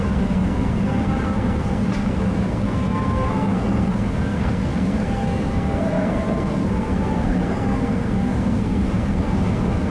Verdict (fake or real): fake